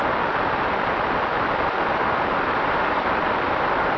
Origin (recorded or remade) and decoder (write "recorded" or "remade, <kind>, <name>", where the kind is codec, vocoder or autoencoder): recorded